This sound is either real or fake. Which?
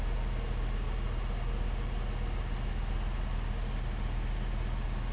real